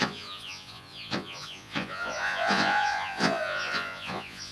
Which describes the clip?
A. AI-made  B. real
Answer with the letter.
A